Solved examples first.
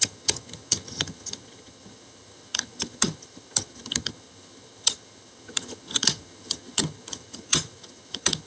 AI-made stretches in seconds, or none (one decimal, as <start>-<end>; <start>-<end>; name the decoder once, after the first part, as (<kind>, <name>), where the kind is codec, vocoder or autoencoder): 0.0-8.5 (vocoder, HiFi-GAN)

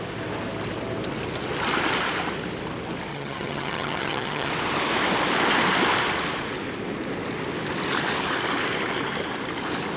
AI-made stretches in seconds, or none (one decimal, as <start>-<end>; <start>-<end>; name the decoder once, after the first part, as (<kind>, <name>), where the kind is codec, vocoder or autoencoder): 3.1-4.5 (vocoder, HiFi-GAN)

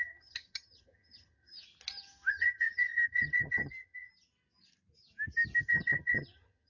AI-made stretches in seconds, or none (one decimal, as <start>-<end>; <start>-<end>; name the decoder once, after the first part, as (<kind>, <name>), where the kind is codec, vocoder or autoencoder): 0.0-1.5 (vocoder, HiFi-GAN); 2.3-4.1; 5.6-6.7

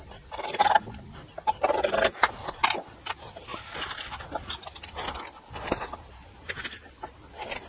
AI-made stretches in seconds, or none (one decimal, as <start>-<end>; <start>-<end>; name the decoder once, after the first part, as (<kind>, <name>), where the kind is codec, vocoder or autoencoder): none

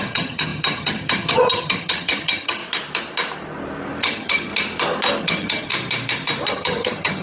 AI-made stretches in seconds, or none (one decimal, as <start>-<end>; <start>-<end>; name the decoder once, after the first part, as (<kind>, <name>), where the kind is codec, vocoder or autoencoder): 0.0-2.6 (vocoder, HiFi-GAN); 4.0-4.5; 5.2-5.7; 6.5-7.2